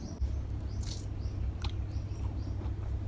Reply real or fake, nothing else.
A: real